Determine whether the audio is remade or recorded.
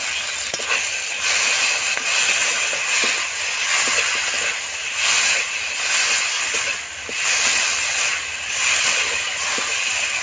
recorded